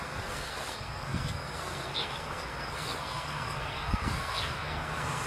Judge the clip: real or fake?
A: fake